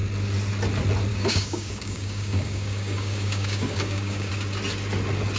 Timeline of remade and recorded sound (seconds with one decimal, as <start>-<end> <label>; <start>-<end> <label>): 0.0-1.1 recorded; 1.1-4.3 remade; 4.3-5.4 recorded